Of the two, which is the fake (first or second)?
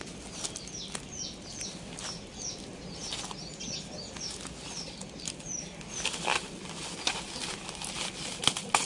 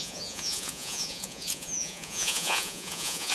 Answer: second